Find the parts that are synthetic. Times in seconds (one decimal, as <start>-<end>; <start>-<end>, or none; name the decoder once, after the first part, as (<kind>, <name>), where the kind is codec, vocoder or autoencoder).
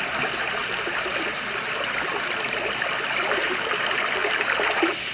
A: 0.6-3.7 (vocoder, BigVGAN v2)